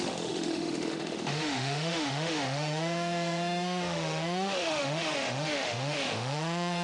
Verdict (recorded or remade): remade